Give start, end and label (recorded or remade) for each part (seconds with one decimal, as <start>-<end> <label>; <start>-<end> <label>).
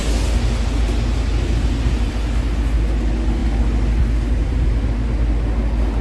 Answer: 0.0-6.0 recorded